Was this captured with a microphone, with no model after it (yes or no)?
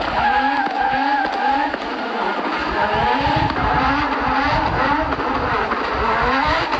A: yes